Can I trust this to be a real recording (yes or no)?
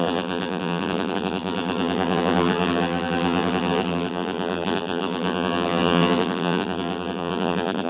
no